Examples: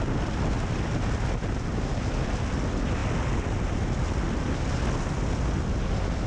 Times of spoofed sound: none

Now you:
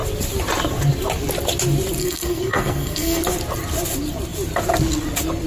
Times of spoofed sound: 2.0-3.2

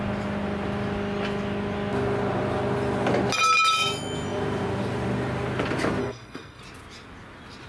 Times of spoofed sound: 6.0-6.6